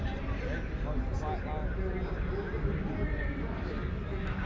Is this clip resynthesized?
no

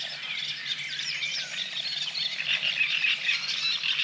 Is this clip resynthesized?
yes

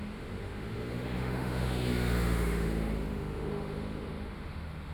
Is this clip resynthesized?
yes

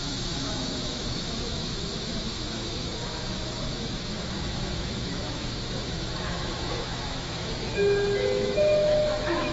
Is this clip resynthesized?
yes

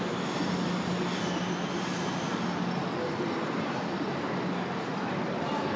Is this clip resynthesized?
no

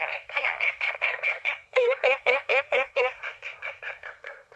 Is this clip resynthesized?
yes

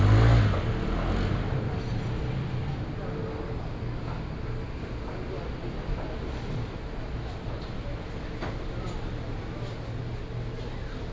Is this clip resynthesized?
no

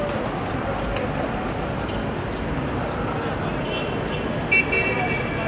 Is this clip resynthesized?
no